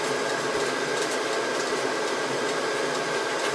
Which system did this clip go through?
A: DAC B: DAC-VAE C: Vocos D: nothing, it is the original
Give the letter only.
D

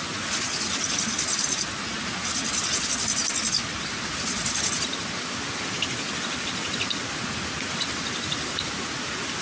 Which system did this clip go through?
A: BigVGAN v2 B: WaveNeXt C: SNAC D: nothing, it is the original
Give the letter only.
D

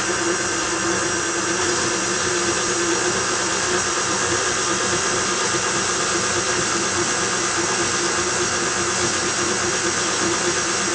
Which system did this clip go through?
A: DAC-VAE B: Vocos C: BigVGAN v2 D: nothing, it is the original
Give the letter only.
D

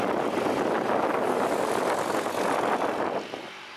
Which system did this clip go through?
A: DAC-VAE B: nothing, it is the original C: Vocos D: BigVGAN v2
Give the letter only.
B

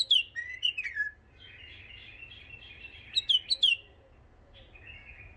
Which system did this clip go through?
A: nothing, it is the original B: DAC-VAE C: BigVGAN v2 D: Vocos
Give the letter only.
A